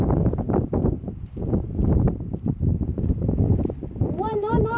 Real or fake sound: fake